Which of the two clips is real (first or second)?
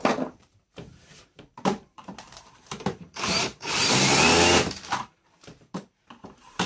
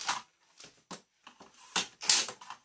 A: second